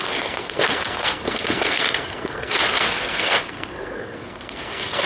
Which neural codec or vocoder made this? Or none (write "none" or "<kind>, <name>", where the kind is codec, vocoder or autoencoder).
codec, SNAC